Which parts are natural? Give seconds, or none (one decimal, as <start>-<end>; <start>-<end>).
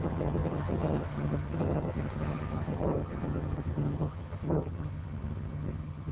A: none